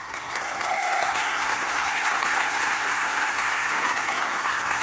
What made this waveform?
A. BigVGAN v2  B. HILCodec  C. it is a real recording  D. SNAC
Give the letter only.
D